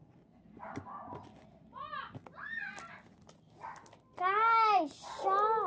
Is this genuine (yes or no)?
yes